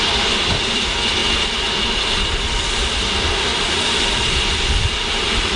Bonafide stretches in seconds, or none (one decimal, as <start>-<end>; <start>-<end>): 1.2-3.1